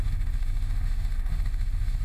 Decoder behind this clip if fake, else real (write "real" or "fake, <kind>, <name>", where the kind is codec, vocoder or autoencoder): fake, autoencoder, DAC-VAE